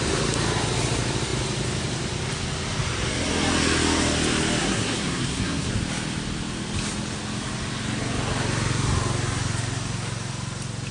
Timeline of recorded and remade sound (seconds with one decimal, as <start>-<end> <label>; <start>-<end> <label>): 0.0-4.6 recorded; 4.6-5.7 remade; 5.7-10.9 recorded